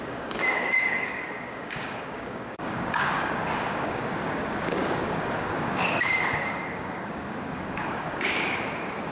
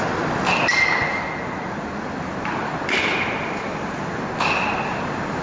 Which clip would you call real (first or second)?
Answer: second